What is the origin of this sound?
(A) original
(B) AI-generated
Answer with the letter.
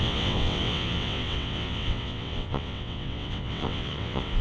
B